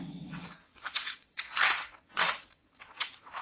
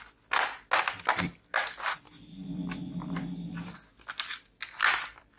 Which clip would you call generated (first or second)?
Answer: first